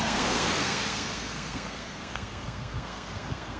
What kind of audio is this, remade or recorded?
remade